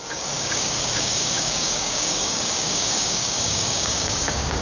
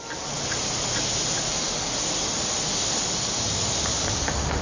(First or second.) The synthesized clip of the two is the first